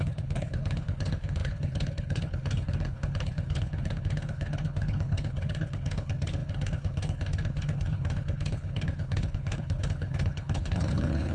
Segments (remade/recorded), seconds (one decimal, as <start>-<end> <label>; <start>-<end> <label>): 0.0-11.3 remade